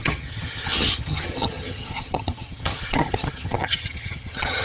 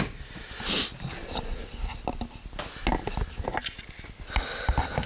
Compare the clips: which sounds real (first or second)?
second